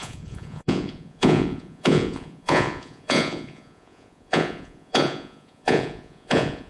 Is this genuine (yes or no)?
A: no